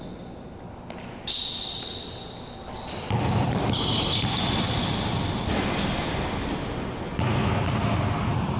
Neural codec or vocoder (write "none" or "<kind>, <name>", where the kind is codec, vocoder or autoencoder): none